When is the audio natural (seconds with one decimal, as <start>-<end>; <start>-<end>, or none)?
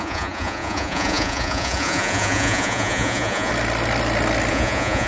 3.5-4.5